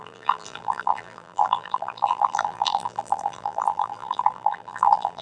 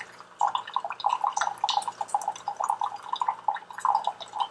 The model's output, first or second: first